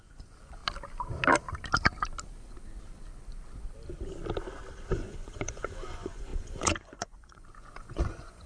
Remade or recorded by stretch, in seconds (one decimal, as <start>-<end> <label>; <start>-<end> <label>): 0.0-0.6 remade; 0.6-4.9 recorded; 4.9-8.5 remade